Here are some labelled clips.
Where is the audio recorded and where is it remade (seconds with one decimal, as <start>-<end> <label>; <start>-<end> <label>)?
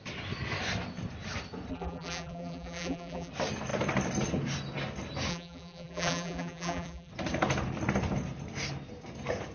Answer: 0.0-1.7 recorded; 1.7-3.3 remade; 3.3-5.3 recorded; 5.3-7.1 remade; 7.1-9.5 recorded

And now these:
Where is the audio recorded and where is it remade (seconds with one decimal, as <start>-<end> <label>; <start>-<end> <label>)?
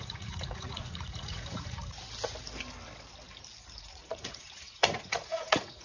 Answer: 0.0-1.8 remade; 1.8-3.8 recorded; 3.8-5.8 remade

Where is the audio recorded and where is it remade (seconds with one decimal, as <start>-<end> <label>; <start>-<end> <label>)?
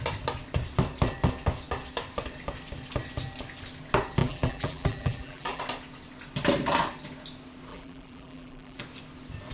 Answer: 0.0-4.2 recorded; 4.2-5.6 remade; 5.6-7.7 recorded; 7.7-8.8 remade; 8.8-9.5 recorded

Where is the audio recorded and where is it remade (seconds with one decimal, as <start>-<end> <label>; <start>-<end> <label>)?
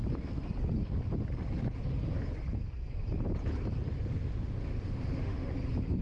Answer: 0.0-4.1 recorded; 4.1-5.5 remade; 5.5-6.0 recorded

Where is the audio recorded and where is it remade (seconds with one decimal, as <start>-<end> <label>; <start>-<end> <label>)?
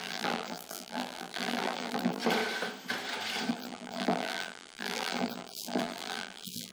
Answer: 0.0-2.2 remade; 2.2-3.5 recorded; 3.5-6.7 remade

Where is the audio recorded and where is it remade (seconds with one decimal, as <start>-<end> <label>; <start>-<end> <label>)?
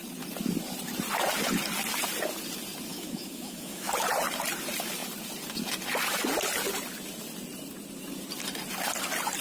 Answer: 0.0-2.9 recorded; 2.9-3.9 remade; 3.9-9.4 recorded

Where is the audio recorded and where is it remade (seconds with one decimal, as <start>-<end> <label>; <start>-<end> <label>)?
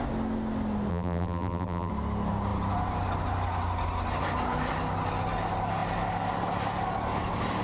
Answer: 0.0-0.9 recorded; 0.9-1.9 remade; 1.9-7.6 recorded